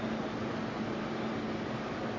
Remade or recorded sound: recorded